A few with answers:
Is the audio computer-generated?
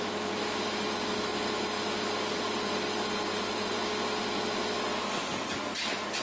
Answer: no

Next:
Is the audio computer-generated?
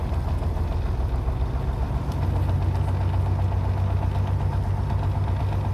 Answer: no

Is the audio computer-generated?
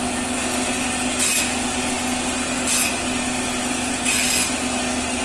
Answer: no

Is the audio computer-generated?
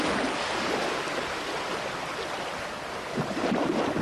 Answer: no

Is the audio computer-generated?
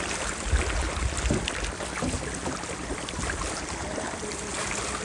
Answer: no